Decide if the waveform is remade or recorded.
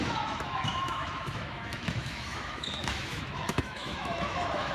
remade